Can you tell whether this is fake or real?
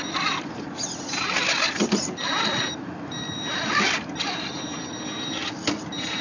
real